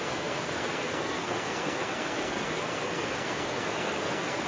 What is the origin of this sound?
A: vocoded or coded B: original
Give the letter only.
A